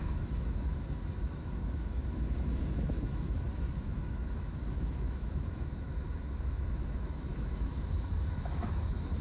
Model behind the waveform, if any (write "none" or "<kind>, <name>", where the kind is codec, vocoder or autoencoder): autoencoder, DAC-VAE